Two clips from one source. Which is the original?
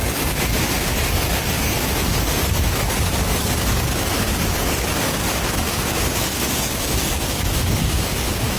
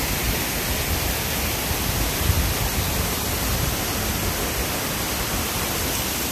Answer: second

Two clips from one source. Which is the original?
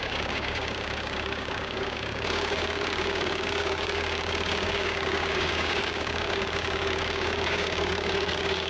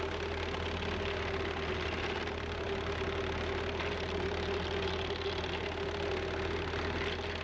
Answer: second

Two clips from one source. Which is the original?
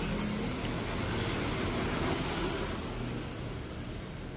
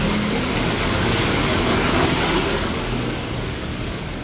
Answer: first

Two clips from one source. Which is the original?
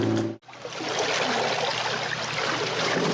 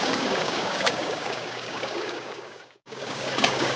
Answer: first